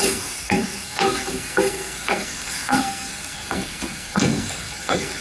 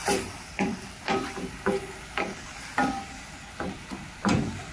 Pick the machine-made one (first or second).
first